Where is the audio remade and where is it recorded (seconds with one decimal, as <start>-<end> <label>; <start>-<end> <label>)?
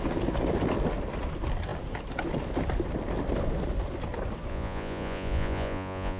0.0-4.5 recorded; 4.5-6.2 remade